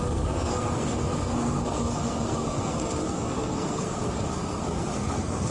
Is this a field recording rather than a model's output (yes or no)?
no